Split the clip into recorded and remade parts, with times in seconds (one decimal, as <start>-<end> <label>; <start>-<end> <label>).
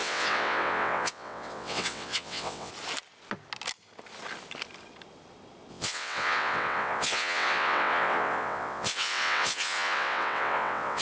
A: 0.0-2.7 remade; 2.7-5.7 recorded; 5.7-11.0 remade